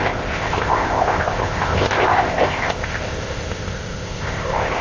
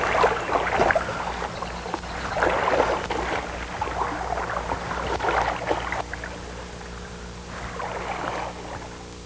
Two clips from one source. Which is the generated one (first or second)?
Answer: first